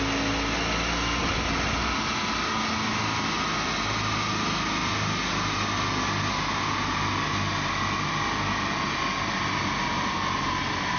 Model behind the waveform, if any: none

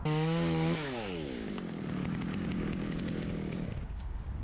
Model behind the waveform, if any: codec, DAC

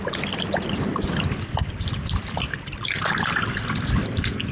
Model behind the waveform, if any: vocoder, BigVGAN v2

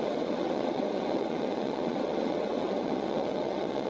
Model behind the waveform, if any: vocoder, WaveNeXt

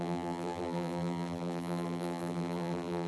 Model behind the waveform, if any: vocoder, BigVGAN v2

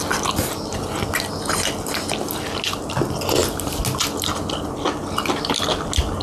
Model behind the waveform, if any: none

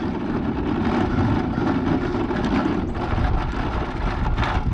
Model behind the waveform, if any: none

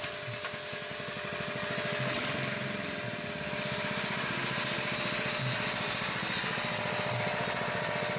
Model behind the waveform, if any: none